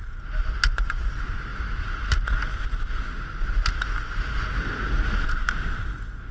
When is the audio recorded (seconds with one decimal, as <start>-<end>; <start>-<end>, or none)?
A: 0.0-1.5; 5.3-6.3